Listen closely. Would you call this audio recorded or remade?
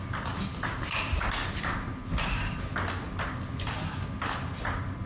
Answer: recorded